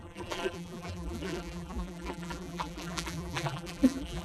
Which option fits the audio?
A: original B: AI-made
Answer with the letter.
B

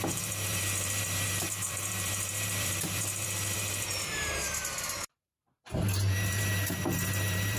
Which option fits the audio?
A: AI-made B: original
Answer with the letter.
A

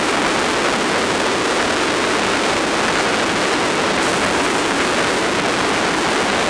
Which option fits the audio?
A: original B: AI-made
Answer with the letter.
A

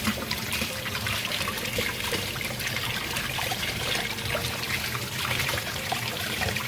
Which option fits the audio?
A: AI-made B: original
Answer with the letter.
A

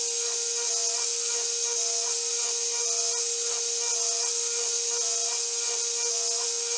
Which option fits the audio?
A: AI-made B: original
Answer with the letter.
B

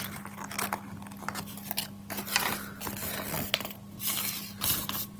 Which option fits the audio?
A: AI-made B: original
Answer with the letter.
B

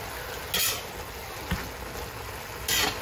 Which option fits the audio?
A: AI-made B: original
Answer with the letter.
B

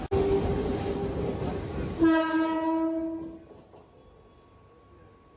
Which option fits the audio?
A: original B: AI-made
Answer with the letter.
A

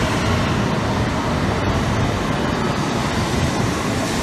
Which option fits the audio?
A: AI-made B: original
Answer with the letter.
B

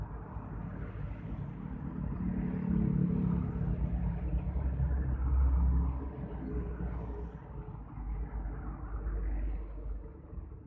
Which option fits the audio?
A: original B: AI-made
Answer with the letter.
A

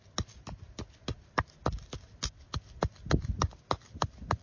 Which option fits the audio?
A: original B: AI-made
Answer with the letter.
A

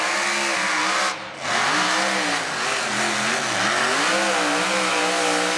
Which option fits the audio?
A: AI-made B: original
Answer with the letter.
B